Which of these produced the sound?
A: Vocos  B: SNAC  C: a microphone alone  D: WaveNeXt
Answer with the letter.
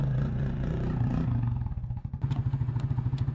A